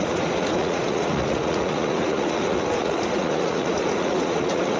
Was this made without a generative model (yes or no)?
no